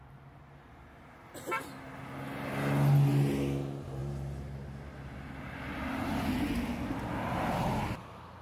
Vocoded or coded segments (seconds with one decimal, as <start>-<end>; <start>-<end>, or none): none